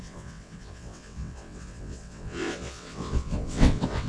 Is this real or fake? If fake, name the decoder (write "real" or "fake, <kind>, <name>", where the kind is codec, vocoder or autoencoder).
fake, vocoder, WaveNeXt